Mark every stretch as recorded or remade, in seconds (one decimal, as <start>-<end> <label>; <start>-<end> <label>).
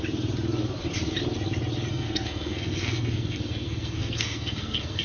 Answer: 0.0-1.9 recorded; 1.9-5.0 remade